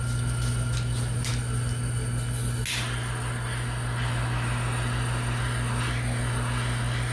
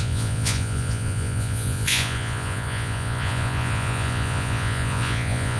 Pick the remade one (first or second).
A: second